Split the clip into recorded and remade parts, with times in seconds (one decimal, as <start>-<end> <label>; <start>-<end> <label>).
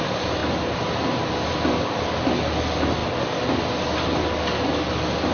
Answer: 0.0-5.3 recorded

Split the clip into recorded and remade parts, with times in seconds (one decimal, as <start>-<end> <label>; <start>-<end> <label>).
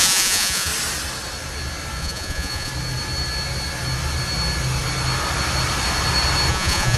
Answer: 0.0-0.7 remade; 0.7-2.0 recorded; 2.0-2.7 remade; 2.7-6.5 recorded; 6.5-7.0 remade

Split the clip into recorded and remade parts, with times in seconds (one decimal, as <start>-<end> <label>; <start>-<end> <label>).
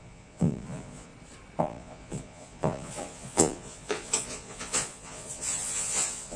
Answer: 0.0-1.1 remade; 1.1-1.6 recorded; 1.6-6.4 remade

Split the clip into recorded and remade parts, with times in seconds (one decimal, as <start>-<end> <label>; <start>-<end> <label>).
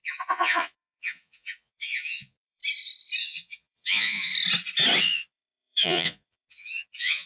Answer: 0.0-2.6 remade; 2.6-3.2 recorded; 3.2-4.3 remade; 4.3-5.0 recorded; 5.0-7.3 remade